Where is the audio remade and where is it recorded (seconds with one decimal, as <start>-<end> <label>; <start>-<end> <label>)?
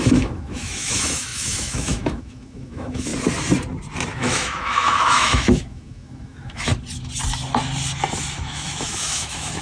0.0-3.1 remade; 3.1-4.1 recorded; 4.1-6.7 remade; 6.7-8.4 recorded; 8.4-9.6 remade